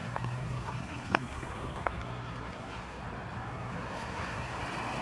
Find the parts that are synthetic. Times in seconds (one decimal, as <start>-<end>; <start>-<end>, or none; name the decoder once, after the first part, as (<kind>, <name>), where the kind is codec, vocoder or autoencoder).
0.0-3.0 (codec, SNAC); 3.4-4.6